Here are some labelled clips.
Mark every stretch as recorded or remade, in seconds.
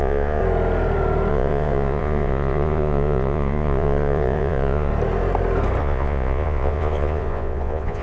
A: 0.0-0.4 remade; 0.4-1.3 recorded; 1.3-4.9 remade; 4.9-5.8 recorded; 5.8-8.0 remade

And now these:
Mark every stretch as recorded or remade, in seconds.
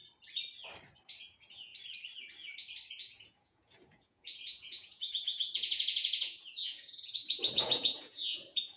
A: 0.0-1.2 recorded; 1.2-1.7 remade; 1.7-2.9 recorded; 2.9-8.8 remade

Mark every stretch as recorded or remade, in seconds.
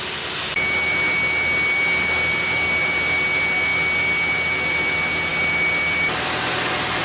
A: 0.0-7.0 recorded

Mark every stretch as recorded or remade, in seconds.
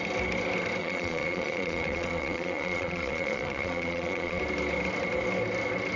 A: 0.0-0.8 recorded; 0.8-4.4 remade; 4.4-6.0 recorded